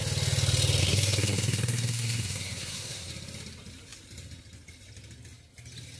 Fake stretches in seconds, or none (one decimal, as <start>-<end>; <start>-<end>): 0.8-3.1